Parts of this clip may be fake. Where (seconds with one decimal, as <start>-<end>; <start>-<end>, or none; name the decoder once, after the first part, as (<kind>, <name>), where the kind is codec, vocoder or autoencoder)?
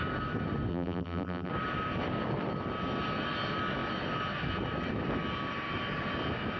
0.7-1.5 (vocoder, BigVGAN v2)